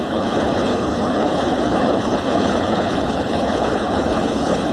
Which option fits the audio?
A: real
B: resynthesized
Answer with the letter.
B